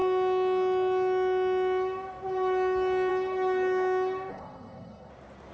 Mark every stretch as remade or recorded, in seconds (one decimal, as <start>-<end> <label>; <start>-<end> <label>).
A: 0.0-4.3 recorded; 4.3-5.1 remade; 5.1-5.5 recorded